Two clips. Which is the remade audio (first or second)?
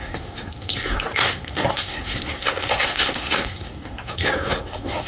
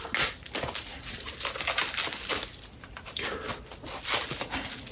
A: first